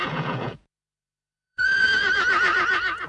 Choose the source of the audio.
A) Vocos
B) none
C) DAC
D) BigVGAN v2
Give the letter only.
A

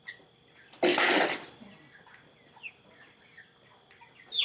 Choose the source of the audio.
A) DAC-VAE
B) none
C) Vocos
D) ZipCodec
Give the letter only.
B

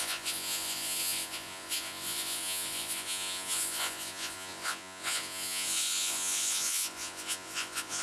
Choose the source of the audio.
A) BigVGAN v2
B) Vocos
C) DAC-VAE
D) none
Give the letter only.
B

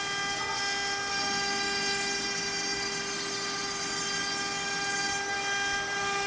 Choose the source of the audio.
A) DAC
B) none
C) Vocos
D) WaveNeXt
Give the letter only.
B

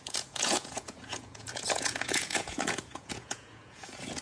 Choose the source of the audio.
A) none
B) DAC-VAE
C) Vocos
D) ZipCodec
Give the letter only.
C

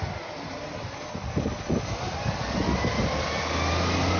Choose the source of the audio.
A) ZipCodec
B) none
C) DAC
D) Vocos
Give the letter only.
B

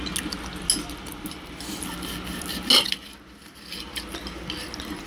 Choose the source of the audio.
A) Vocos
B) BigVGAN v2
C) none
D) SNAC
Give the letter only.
C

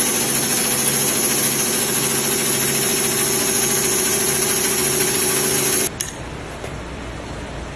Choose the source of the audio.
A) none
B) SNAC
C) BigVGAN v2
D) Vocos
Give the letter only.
A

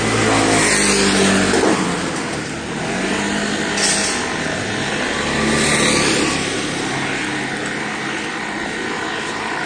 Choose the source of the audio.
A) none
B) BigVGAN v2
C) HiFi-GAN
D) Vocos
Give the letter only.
A